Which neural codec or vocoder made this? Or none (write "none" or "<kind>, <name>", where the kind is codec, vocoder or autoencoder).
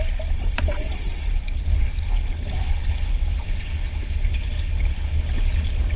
none